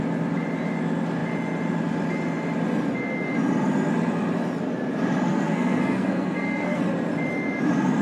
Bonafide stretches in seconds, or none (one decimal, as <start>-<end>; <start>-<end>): 0.0-5.3; 6.8-8.0

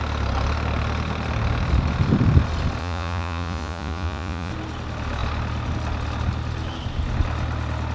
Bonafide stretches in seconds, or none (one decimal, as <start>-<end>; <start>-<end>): 0.0-2.8; 4.5-7.9

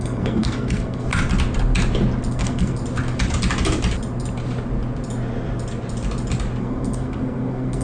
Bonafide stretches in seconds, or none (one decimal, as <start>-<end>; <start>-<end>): 1.1-2.3; 2.8-6.6

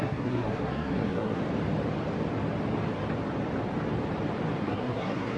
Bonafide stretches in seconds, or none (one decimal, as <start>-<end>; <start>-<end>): 1.4-4.6

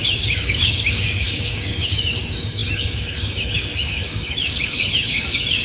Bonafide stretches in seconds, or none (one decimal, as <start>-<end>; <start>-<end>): none